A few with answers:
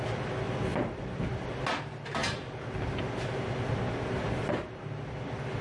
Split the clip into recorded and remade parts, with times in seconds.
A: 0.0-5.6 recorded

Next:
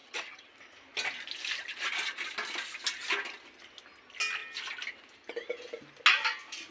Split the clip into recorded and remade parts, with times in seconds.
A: 0.0-0.5 remade; 0.5-6.7 recorded

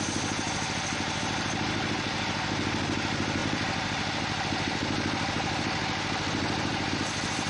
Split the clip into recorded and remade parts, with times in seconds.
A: 0.0-7.5 recorded

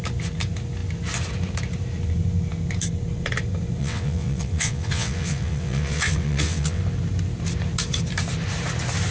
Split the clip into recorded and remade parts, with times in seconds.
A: 0.0-3.8 recorded; 3.8-6.8 remade; 6.8-9.1 recorded

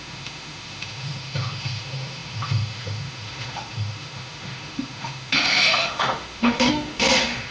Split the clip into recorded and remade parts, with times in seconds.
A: 0.0-7.5 remade

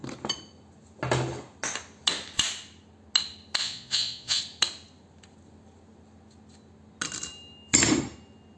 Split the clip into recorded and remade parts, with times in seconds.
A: 0.0-3.6 recorded; 3.6-4.4 remade; 4.4-8.6 recorded

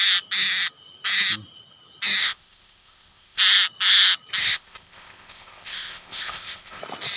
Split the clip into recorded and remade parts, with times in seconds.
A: 0.0-2.2 recorded; 2.2-3.4 remade; 3.4-4.4 recorded; 4.4-6.8 remade; 6.8-7.2 recorded

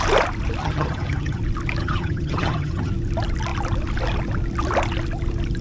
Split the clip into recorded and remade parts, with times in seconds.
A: 0.0-0.6 recorded; 0.6-1.4 remade; 1.4-1.8 recorded; 1.8-2.9 remade; 2.9-5.6 recorded